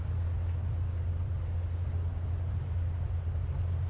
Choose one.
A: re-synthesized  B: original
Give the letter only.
B